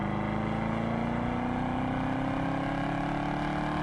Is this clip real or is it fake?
real